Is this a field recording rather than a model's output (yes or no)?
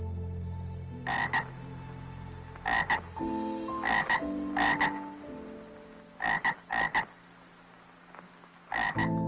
yes